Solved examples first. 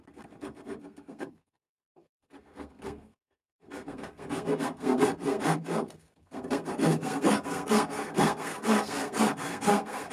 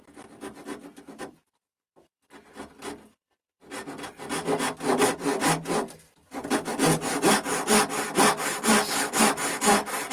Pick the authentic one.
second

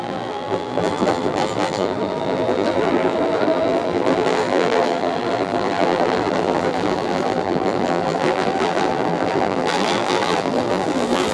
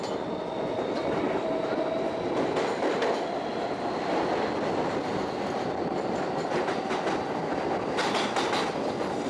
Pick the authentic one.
second